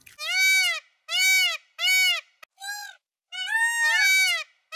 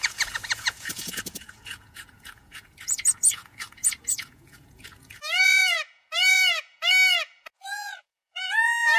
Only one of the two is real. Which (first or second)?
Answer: first